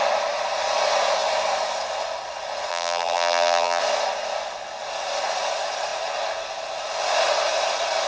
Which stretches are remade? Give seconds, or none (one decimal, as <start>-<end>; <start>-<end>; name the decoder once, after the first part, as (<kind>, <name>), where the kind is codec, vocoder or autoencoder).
2.7-3.8 (vocoder, BigVGAN v2)